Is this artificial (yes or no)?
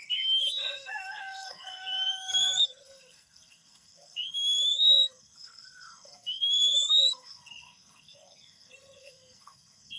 yes